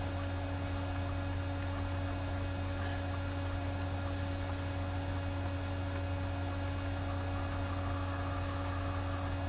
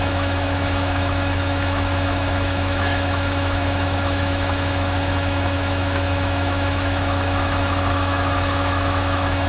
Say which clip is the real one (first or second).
first